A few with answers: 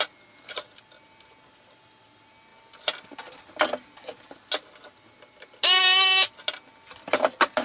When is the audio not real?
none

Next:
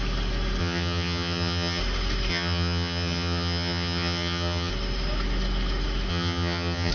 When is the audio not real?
0.6-1.8; 2.3-4.7; 6.1-6.9